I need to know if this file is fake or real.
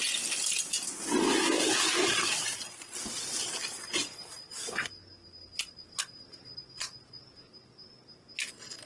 real